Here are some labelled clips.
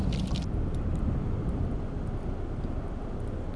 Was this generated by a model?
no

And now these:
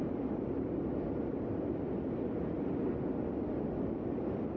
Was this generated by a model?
no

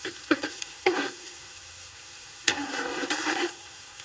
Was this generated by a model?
yes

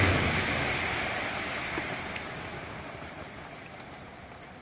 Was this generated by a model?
no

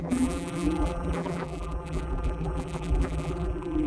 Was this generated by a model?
yes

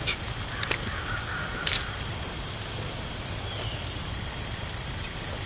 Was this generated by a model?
no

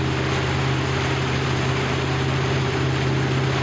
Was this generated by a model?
no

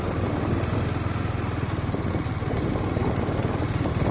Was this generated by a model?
no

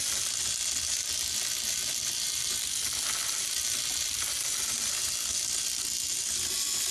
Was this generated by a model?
no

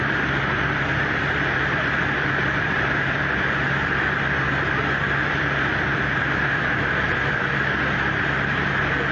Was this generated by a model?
yes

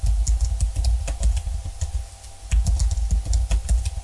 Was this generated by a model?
no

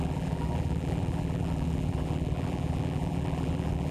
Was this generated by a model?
yes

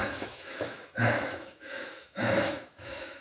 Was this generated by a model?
yes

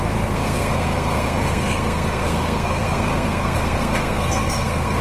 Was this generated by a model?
yes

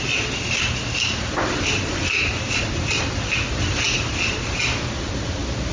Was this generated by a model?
no